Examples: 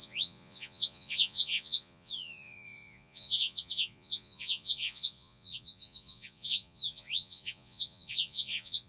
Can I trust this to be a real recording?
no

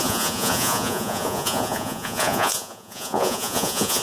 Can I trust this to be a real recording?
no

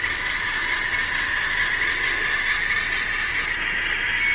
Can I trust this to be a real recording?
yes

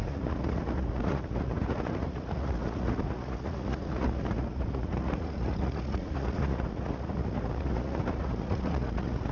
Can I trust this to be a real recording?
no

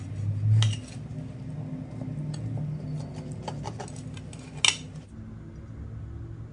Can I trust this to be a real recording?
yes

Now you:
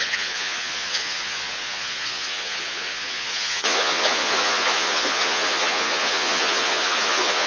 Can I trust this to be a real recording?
no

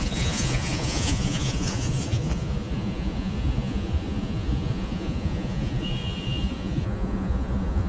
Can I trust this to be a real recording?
no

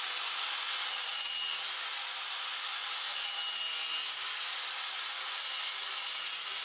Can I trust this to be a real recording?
yes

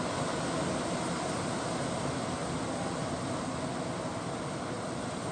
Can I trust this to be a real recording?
yes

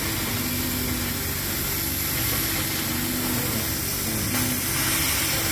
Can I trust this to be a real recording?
yes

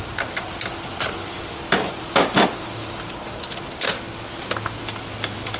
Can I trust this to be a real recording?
yes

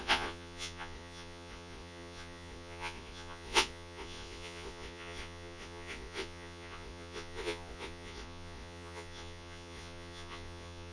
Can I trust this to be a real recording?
no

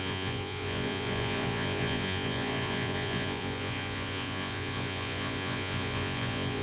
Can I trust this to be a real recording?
no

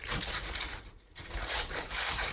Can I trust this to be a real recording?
no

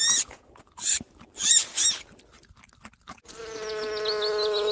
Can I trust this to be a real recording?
yes